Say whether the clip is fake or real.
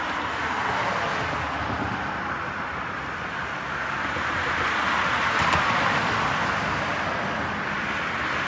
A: real